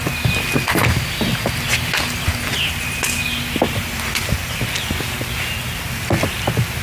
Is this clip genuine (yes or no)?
yes